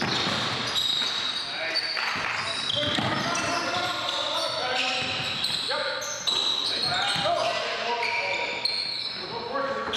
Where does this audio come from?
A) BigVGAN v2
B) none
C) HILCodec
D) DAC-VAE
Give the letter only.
B